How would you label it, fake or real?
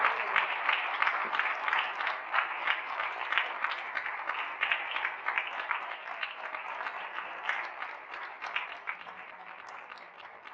fake